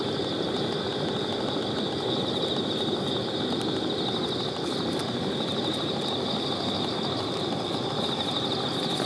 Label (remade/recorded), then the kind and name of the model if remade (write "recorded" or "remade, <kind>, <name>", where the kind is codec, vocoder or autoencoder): recorded